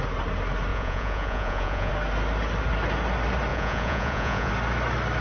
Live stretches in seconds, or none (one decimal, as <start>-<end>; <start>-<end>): 0.0-0.7; 1.9-3.5; 4.5-5.2

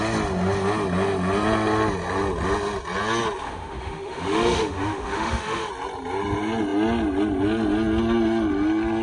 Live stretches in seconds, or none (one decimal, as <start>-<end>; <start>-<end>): 0.0-3.4; 5.7-9.0

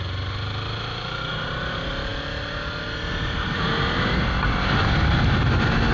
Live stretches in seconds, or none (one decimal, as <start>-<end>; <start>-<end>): 0.0-5.9

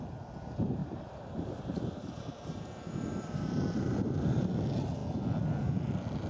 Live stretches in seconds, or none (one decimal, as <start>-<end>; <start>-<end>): 0.0-0.8; 4.4-6.3

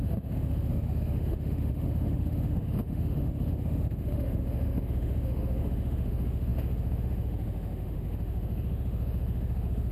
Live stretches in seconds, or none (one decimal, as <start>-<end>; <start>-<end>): none

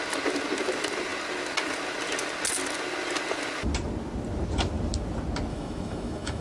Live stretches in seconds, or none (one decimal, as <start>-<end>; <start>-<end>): 0.0-5.5